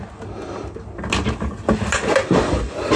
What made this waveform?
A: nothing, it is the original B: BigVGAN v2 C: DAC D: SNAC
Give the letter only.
A